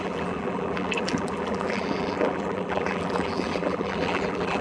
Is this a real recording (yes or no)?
no